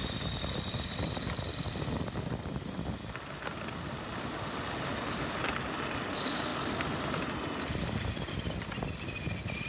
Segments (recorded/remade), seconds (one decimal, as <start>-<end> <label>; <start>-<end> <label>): 0.0-3.5 recorded; 3.5-4.1 remade; 4.1-6.5 recorded; 6.5-7.3 remade; 7.3-9.7 recorded